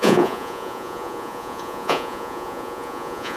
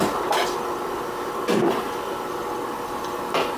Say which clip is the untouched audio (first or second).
second